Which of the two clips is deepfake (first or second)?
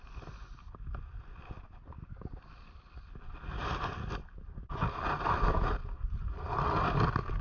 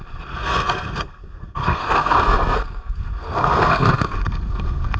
second